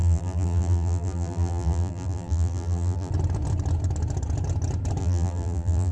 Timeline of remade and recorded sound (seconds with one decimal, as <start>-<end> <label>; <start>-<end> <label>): 0.0-3.1 remade; 3.1-5.0 recorded; 5.0-5.9 remade